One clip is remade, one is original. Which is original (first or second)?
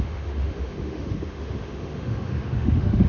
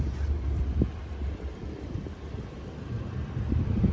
second